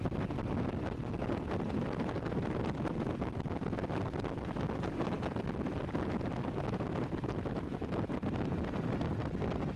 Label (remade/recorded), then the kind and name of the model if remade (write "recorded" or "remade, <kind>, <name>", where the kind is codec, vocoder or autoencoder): recorded